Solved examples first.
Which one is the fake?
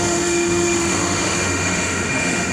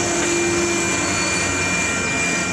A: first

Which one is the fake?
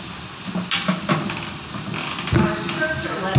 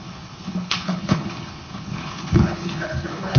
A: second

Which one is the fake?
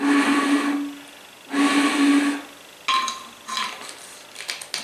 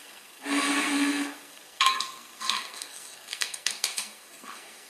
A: second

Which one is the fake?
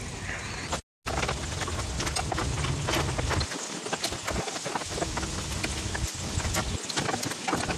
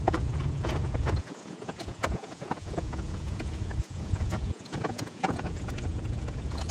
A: second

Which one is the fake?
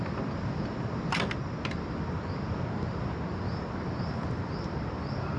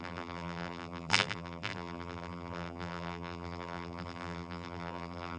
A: second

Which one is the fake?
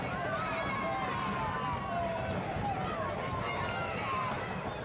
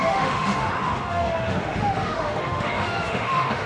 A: second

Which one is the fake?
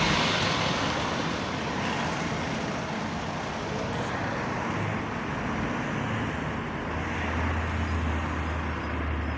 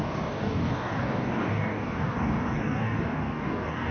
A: second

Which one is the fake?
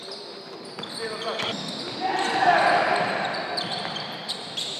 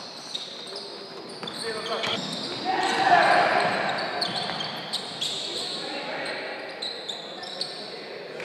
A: first